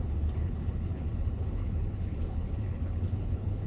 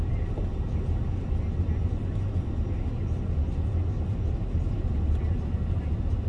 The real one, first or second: second